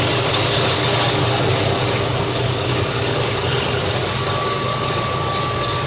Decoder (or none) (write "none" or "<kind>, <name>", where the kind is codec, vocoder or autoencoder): codec, DAC